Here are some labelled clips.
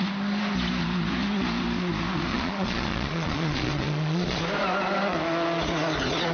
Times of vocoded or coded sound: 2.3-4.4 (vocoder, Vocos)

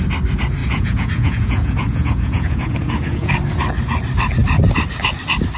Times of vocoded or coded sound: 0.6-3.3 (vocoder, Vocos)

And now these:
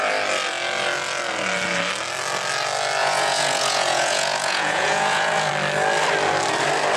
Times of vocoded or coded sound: 3.0-5.5 (vocoder, Vocos)

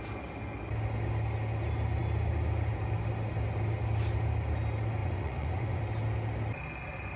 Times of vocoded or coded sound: 5.0-5.8 (vocoder, Vocos)

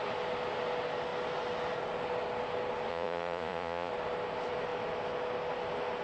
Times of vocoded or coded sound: 2.9-3.9 (vocoder, Vocos)